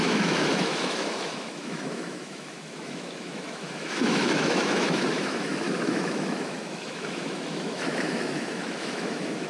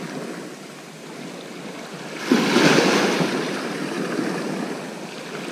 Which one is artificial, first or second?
first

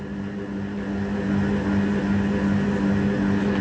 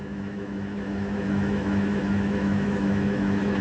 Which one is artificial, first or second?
second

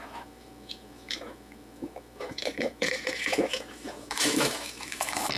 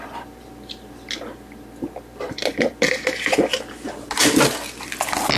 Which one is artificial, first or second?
first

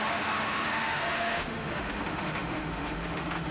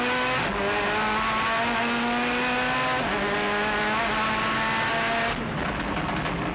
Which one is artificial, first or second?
first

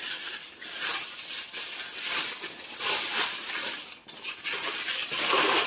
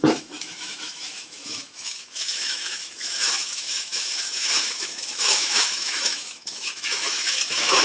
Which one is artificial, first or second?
second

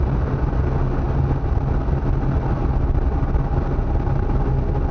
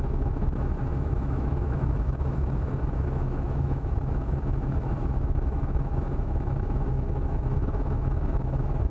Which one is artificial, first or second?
second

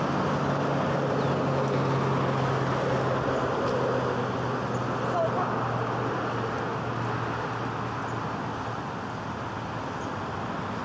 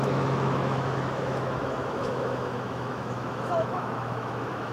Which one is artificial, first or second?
second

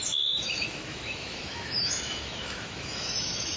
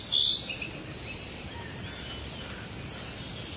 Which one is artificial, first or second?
first